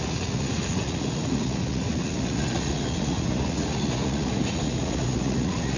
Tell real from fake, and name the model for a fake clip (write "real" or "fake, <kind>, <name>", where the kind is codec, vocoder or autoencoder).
fake, vocoder, Vocos